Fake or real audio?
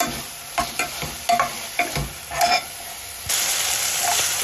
fake